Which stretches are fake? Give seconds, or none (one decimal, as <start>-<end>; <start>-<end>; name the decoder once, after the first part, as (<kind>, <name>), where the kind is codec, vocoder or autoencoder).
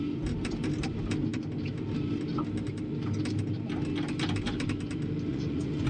5.3-5.9 (vocoder, Vocos)